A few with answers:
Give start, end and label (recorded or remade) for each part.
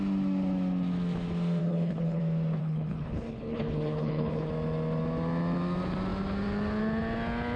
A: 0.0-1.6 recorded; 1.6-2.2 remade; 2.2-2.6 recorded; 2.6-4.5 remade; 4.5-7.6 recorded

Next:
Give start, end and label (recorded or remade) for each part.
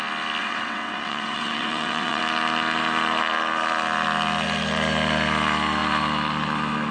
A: 0.0-0.4 recorded; 0.4-2.2 remade; 2.2-6.9 recorded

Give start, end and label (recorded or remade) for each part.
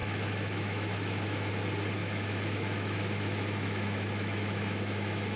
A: 0.0-1.5 remade; 1.5-2.0 recorded; 2.0-5.4 remade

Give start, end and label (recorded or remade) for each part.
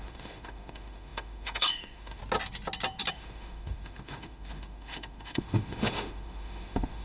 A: 0.0-2.2 remade; 2.2-3.1 recorded; 3.1-7.0 remade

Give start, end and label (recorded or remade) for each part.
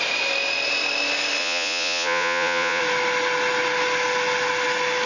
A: 0.0-1.4 recorded; 1.4-2.8 remade; 2.8-5.1 recorded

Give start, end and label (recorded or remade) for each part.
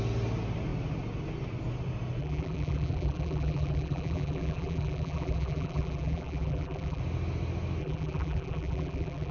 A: 0.0-2.2 recorded; 2.2-7.0 remade; 7.0-7.8 recorded; 7.8-9.3 remade